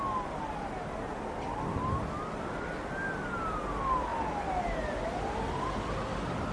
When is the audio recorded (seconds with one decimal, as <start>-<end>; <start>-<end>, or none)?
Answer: 0.0-6.5